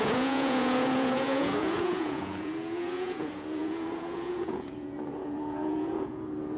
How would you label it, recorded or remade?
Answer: remade